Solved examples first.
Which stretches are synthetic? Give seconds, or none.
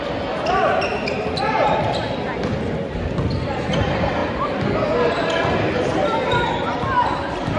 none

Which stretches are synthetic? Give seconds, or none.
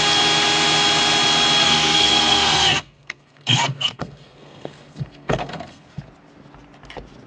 1.6-6.0 (codec, SNAC)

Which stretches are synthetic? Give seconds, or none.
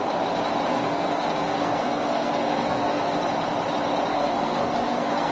0.7-3.2 (codec, SNAC); 4.1-5.3